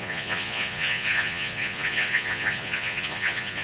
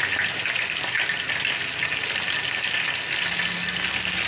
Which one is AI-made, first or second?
first